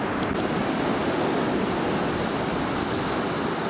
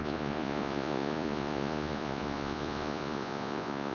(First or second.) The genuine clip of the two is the first